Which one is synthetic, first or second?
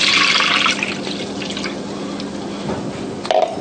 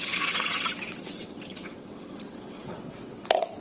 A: second